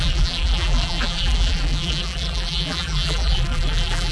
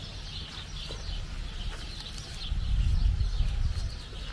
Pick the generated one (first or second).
first